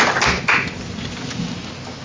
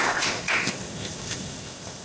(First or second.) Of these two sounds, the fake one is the second